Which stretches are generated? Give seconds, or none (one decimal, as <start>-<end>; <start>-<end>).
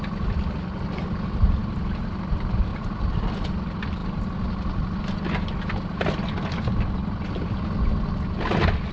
2.7-3.2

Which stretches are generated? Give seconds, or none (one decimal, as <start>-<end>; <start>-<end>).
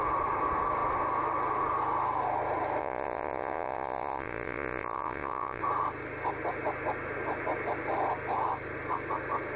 2.8-5.6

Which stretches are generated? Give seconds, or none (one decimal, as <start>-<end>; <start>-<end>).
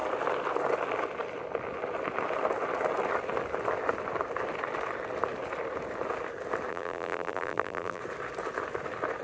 6.7-8.0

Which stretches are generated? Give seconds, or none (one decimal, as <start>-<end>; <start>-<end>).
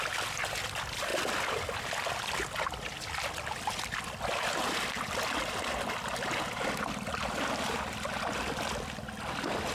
none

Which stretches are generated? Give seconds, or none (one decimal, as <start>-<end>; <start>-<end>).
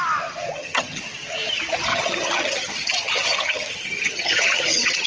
0.5-1.0; 1.9-5.1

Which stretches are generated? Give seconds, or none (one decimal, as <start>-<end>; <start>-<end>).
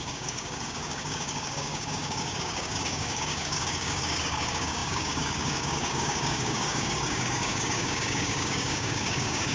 0.0-9.5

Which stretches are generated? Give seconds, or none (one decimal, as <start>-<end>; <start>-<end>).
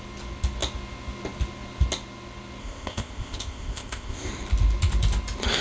2.6-4.3